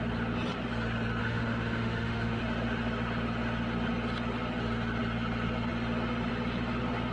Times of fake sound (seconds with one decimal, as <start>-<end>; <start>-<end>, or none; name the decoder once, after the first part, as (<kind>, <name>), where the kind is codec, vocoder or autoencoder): 1.2-2.4 (autoencoder, DAC-VAE)